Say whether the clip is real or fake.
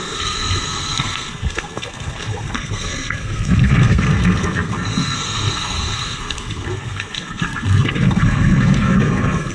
fake